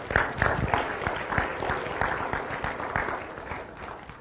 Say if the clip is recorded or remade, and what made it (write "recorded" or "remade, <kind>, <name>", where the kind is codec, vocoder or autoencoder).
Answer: recorded